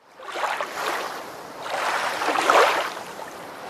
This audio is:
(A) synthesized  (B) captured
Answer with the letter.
A